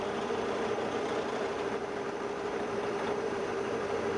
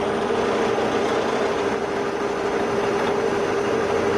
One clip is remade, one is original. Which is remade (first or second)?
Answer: first